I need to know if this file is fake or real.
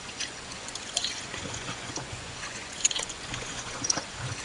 fake